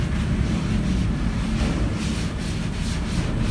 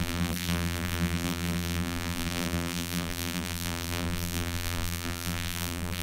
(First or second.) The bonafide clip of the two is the first